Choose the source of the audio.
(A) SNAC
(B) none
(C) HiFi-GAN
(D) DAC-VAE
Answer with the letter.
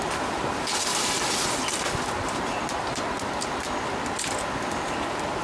B